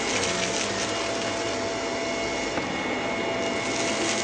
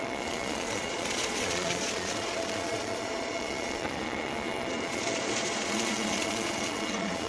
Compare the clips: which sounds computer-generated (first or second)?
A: second